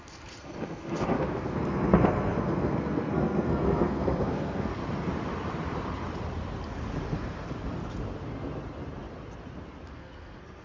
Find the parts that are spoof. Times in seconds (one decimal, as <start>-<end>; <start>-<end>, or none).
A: 0.0-4.8; 9.9-10.6